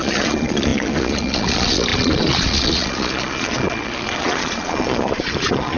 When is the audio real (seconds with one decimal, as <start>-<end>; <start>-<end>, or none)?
none